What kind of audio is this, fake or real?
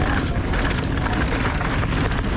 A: real